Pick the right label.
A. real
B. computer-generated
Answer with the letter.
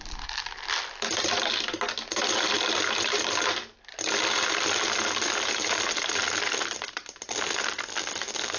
A